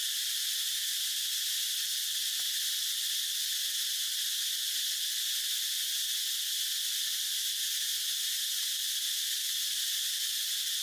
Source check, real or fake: real